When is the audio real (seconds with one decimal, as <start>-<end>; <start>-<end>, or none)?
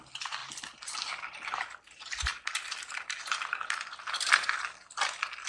0.0-5.5